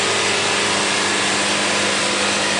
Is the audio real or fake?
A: real